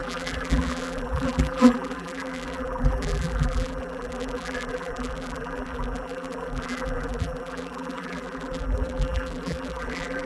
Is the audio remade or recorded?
remade